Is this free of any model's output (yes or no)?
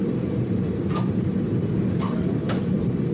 no